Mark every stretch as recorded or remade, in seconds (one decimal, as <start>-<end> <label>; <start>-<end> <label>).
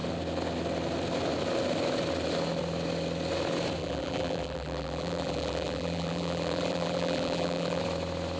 0.0-3.8 recorded; 3.8-7.8 remade; 7.8-8.4 recorded